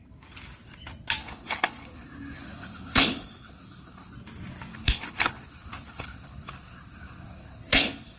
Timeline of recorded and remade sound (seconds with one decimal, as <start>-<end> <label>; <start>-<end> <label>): 0.0-1.2 recorded; 1.2-4.1 remade; 4.1-4.7 recorded; 4.7-8.2 remade